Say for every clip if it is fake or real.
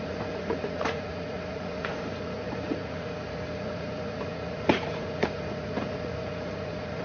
fake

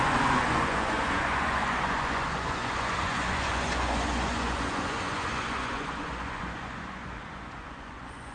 fake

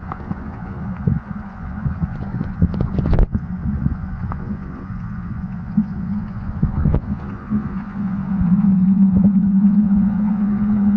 fake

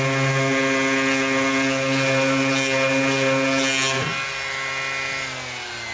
real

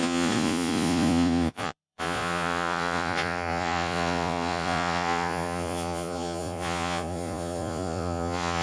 fake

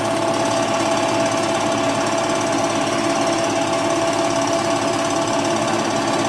real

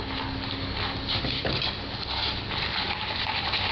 real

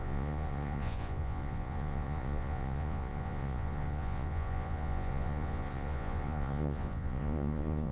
fake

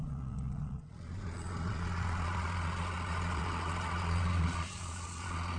fake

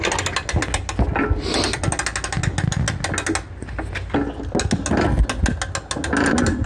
real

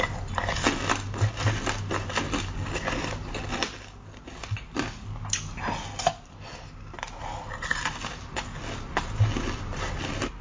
real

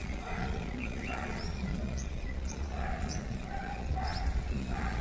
fake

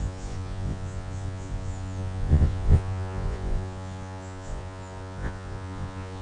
fake